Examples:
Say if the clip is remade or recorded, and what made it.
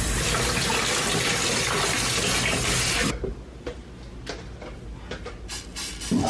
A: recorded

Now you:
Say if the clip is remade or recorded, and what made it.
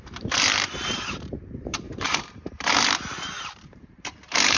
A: remade, vocoder, BigVGAN v2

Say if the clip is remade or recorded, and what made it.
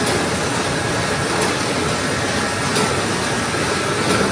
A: recorded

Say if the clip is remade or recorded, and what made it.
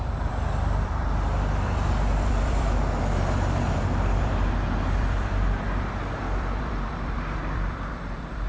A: remade, vocoder, BigVGAN v2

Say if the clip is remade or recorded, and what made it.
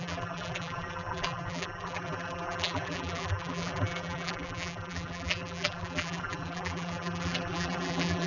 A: remade, vocoder, BigVGAN v2